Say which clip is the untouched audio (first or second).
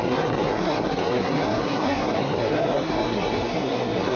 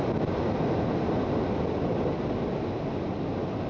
second